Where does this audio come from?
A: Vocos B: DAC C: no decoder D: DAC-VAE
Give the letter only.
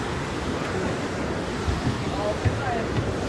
C